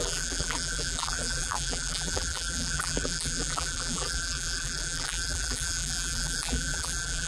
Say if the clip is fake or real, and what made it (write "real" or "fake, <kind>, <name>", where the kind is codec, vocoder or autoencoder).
fake, vocoder, BigVGAN v2